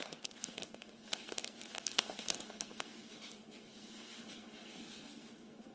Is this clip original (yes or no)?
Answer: no